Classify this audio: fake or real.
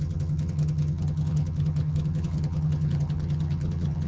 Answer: fake